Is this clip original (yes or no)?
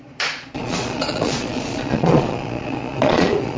no